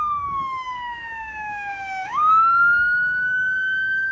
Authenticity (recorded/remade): remade